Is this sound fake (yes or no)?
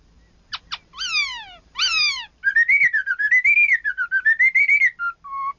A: no